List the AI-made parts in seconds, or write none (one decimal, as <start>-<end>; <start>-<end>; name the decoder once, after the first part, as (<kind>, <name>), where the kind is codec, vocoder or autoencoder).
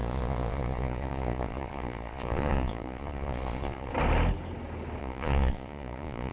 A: 0.0-3.9 (vocoder, Vocos); 5.0-6.3